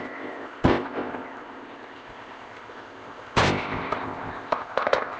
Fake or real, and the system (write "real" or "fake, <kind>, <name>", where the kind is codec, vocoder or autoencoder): fake, codec, ZipCodec